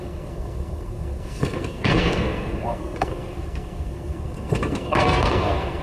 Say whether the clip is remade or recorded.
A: remade